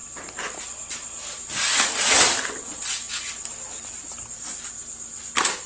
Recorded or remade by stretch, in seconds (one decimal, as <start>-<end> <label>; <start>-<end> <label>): 0.0-5.7 recorded